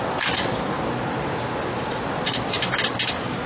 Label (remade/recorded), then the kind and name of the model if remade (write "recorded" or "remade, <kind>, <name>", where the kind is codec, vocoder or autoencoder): recorded